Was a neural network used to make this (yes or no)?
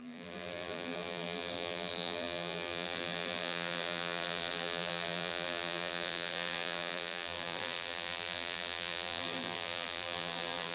yes